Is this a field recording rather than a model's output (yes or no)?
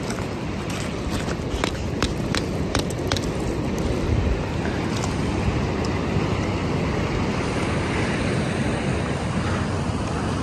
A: yes